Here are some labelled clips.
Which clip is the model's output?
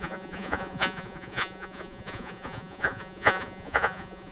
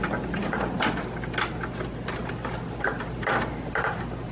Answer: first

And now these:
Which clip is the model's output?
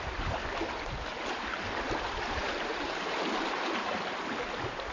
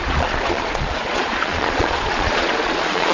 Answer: second